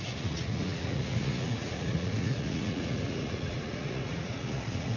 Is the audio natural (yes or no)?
no